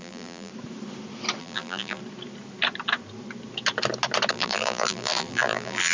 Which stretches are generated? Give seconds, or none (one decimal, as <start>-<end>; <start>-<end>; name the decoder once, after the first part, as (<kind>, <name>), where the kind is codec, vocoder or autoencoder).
0.0-0.5 (vocoder, BigVGAN v2); 1.4-2.0; 4.3-5.9

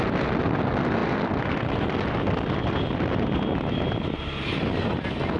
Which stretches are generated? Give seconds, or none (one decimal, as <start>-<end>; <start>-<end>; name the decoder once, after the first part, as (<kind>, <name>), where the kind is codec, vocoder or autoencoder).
none